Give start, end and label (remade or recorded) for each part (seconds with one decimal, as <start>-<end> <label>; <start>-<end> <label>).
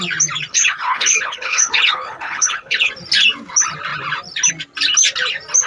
0.0-0.5 recorded; 0.5-2.9 remade; 2.9-5.7 recorded